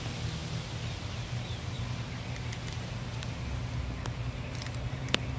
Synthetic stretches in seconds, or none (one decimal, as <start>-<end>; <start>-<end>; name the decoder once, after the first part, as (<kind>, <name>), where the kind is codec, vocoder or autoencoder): none